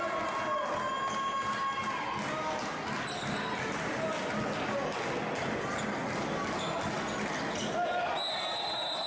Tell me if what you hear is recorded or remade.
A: recorded